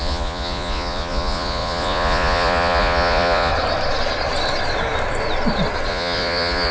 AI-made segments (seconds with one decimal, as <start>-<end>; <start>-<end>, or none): 0.0-3.5; 5.9-6.7